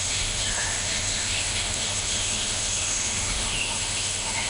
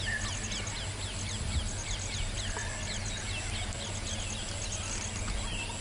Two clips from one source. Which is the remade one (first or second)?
first